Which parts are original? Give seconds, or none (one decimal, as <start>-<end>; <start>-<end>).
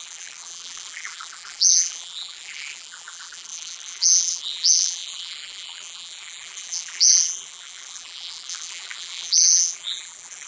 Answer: none